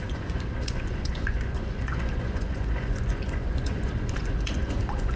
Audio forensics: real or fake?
fake